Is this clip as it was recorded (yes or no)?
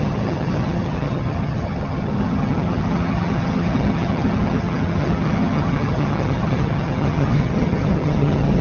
no